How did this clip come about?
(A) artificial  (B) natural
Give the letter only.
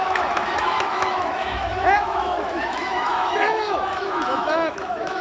A